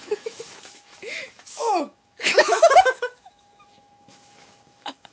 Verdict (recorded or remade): remade